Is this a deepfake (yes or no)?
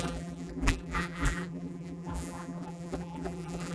yes